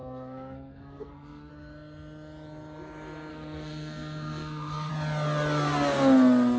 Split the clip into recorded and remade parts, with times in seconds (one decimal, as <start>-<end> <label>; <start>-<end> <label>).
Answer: 0.0-1.5 remade; 1.5-3.3 recorded; 3.3-4.9 remade; 4.9-6.6 recorded